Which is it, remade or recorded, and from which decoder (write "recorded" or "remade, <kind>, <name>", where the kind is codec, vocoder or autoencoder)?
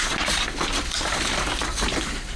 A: remade, vocoder, BigVGAN v2